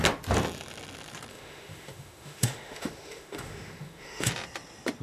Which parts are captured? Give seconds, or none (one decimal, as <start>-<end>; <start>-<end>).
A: 0.0-1.3; 4.3-5.0